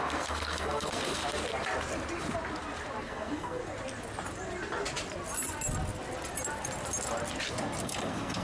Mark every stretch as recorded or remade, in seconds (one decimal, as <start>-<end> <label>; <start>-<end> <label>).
0.0-1.2 remade; 1.2-3.0 recorded; 3.0-3.6 remade; 3.6-7.8 recorded; 7.8-8.4 remade

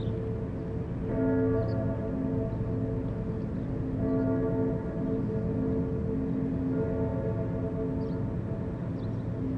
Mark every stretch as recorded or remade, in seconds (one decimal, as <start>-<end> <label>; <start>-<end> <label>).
0.0-9.6 recorded

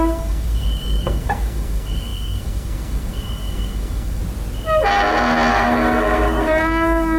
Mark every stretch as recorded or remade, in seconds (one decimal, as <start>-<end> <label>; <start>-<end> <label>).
0.0-4.2 remade; 4.2-5.5 recorded; 5.5-7.2 remade

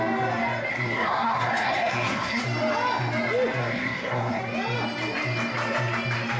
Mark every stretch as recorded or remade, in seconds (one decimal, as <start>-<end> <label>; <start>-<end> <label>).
0.0-0.7 recorded; 0.7-2.4 remade; 2.4-3.6 recorded; 3.6-4.4 remade; 4.4-6.4 recorded